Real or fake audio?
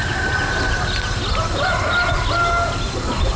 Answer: real